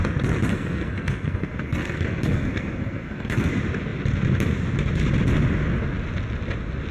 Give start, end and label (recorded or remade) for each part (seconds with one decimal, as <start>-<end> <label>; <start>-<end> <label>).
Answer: 0.0-0.5 recorded; 0.5-3.5 remade; 3.5-6.9 recorded

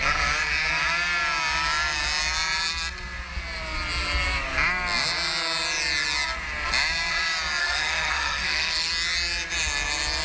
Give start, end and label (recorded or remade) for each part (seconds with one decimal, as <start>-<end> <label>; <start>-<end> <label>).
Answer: 0.0-7.6 recorded; 7.6-8.9 remade; 8.9-10.2 recorded

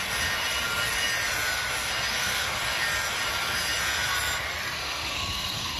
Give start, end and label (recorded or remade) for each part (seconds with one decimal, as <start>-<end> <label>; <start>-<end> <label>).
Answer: 0.0-2.1 recorded; 2.1-2.6 remade; 2.6-4.8 recorded; 4.8-5.8 remade

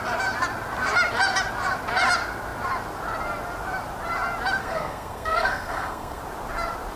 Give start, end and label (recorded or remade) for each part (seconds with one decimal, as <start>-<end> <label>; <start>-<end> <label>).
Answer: 0.0-4.6 recorded; 4.6-6.2 remade; 6.2-7.0 recorded

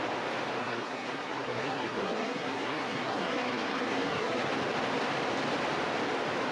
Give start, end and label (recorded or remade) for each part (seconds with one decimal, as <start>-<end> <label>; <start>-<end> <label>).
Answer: 0.0-0.6 recorded; 0.6-4.5 remade; 4.5-6.5 recorded

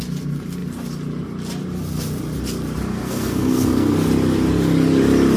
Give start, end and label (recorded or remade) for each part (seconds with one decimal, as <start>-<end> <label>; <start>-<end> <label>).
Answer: 0.0-2.9 recorded; 2.9-3.9 remade; 3.9-5.4 recorded